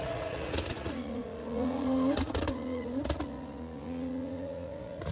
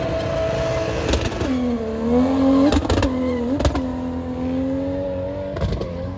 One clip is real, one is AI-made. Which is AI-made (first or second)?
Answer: first